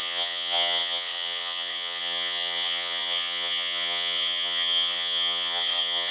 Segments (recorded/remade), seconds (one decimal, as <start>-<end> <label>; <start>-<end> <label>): 0.0-6.1 remade